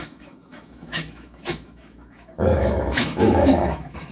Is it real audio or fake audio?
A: fake